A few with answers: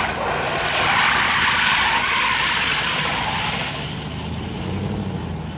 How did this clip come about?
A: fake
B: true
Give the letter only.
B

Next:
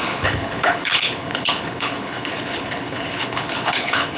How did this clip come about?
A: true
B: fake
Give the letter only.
B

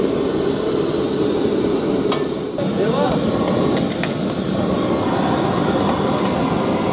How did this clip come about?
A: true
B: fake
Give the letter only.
A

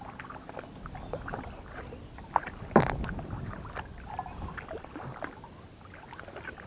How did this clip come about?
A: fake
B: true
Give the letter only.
B